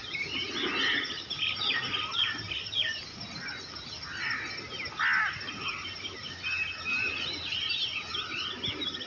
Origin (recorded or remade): recorded